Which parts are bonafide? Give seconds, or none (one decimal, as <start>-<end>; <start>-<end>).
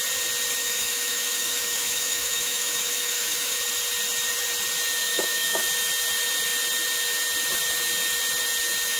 0.0-0.6; 3.6-5.0; 5.6-9.0